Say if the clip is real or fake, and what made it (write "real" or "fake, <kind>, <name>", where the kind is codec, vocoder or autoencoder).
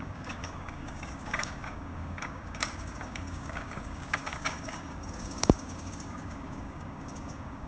fake, codec, DAC